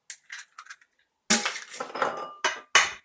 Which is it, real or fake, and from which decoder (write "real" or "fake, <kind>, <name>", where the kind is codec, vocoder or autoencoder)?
real